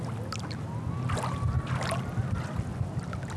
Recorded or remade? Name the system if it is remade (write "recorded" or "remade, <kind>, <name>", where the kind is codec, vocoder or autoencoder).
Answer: recorded